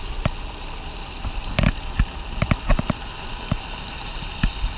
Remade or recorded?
recorded